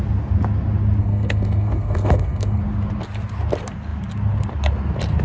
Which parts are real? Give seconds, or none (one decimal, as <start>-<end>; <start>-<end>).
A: 0.0-1.0; 2.6-5.2